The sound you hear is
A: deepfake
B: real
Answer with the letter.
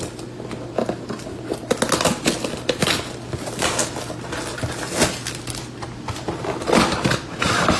B